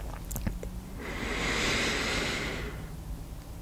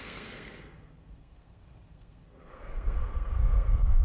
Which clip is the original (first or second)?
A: first